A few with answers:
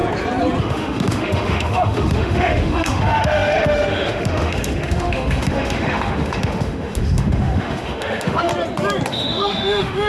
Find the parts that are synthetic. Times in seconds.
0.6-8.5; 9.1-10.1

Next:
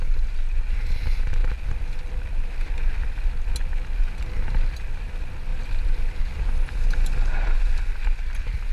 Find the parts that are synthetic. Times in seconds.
none

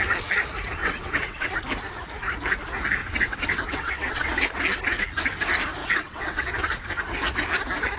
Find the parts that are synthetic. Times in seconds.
0.8-1.5; 3.0-4.6; 5.8-6.8

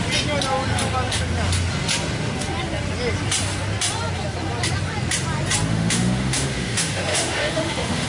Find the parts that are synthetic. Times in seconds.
5.7-8.1

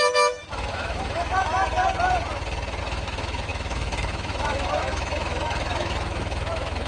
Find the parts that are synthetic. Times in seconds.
0.0-1.8; 2.8-6.9

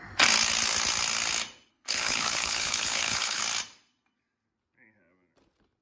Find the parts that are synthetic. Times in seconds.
1.7-3.4

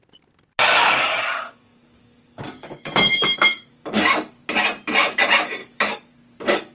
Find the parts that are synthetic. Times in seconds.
0.8-4.0; 5.6-6.1